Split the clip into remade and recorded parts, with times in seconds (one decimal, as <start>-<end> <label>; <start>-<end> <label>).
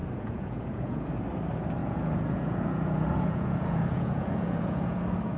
0.0-1.1 remade; 1.1-1.8 recorded; 1.8-5.0 remade; 5.0-5.4 recorded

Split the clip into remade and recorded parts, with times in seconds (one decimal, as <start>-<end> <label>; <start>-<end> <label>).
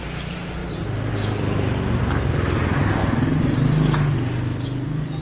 0.0-5.2 recorded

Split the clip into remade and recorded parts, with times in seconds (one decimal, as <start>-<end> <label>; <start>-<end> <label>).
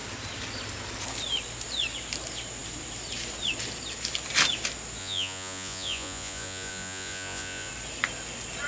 0.0-5.0 recorded; 5.0-7.7 remade; 7.7-8.7 recorded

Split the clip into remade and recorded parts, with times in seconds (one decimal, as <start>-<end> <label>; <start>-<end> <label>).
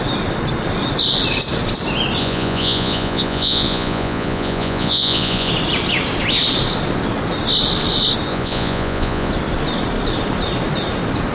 0.0-2.2 recorded; 2.2-5.5 remade; 5.5-8.3 recorded; 8.3-9.3 remade; 9.3-11.3 recorded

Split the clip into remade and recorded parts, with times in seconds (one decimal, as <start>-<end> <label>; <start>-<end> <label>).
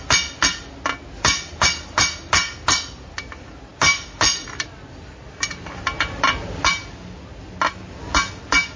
0.0-8.8 recorded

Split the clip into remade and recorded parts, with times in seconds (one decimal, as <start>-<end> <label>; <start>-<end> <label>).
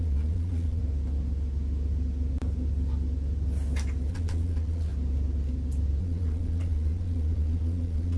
0.0-0.8 remade; 0.8-4.1 recorded; 4.1-4.9 remade; 4.9-6.0 recorded; 6.0-8.2 remade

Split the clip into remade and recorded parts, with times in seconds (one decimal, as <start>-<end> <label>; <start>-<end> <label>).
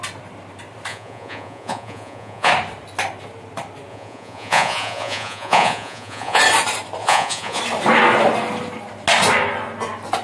0.0-0.9 recorded; 0.9-2.5 remade; 2.5-3.9 recorded; 3.9-6.4 remade; 6.4-7.0 recorded; 7.0-7.6 remade; 7.6-10.2 recorded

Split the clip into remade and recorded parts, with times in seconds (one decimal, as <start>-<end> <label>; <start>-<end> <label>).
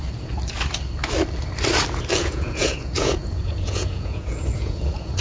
0.0-2.2 recorded; 2.2-5.2 remade